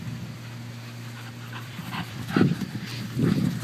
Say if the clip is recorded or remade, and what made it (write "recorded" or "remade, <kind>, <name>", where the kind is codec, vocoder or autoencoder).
remade, vocoder, BigVGAN v2